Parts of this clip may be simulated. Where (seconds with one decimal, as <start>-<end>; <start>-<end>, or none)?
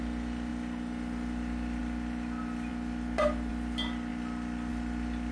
none